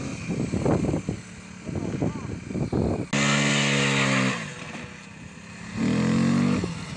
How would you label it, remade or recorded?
recorded